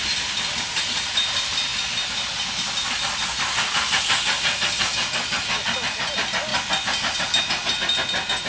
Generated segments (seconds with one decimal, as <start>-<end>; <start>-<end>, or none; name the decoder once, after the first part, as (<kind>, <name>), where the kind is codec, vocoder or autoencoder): none